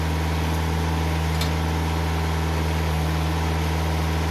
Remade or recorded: recorded